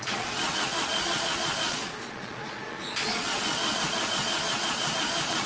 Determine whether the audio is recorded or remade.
remade